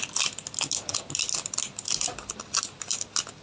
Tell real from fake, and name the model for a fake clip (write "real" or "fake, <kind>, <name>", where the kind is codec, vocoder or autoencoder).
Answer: real